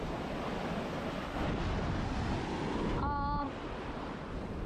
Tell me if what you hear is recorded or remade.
recorded